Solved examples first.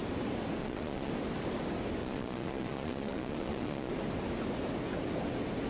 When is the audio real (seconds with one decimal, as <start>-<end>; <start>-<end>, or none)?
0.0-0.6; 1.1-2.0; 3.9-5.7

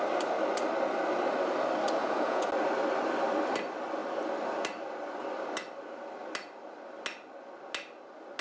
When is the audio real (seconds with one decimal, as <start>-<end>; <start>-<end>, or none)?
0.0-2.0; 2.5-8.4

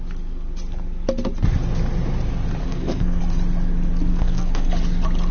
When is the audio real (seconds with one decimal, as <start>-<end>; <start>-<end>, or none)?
0.0-2.6; 3.2-4.1; 4.7-5.3

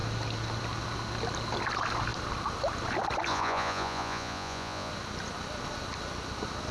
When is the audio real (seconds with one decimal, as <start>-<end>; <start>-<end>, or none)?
0.0-3.3; 4.9-6.7